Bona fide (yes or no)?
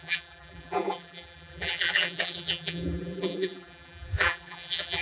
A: no